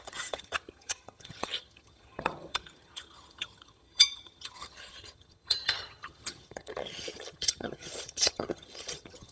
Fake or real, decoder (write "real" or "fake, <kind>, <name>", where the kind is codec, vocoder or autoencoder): fake, vocoder, HiFi-GAN